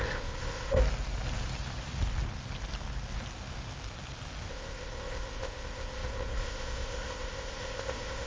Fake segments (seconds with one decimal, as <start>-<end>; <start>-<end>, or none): 0.0-0.8; 4.5-8.3